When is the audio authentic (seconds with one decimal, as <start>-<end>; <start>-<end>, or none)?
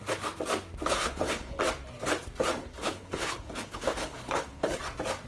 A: 0.0-1.0; 1.6-2.6; 4.8-5.3